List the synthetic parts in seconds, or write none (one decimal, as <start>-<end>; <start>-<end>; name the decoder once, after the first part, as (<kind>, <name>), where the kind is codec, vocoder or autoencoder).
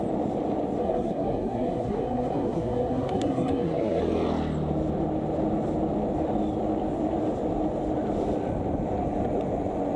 0.8-4.0 (codec, SNAC)